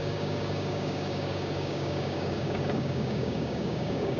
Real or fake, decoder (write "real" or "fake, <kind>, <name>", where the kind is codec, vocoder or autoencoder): fake, codec, DAC